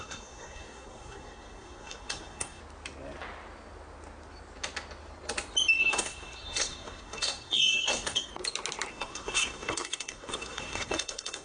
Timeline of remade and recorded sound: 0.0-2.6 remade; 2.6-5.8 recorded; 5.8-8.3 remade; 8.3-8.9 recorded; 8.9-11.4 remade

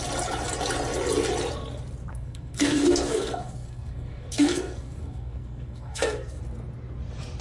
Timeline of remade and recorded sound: 0.0-2.1 recorded; 2.1-6.4 remade; 6.4-7.4 recorded

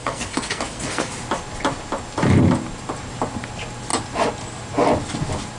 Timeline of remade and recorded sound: 0.0-1.1 remade; 1.1-5.6 recorded

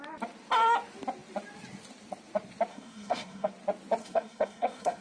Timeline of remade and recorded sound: 0.0-2.7 recorded; 2.7-3.5 remade; 3.5-4.0 recorded; 4.0-5.0 remade

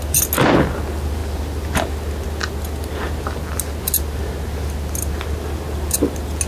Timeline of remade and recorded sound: 0.0-6.5 recorded

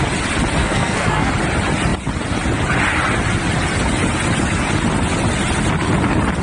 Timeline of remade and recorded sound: 0.0-0.6 recorded; 0.6-1.3 remade; 1.3-6.4 recorded

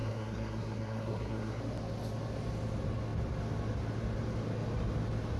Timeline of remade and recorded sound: 0.0-1.6 remade; 1.6-5.4 recorded